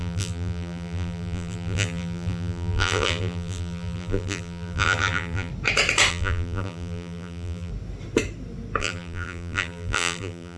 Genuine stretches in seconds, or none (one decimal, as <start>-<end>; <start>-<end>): 5.5-6.1; 7.7-8.8